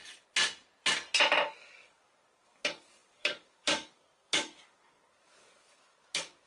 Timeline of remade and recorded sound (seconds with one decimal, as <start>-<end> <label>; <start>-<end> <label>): 0.0-1.6 recorded; 1.6-6.5 remade